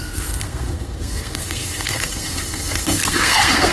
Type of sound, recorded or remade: remade